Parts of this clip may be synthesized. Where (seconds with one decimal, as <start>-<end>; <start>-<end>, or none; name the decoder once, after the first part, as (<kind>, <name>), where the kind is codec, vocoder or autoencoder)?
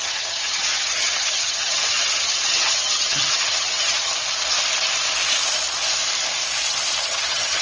0.0-4.1 (vocoder, HiFi-GAN); 7.0-7.6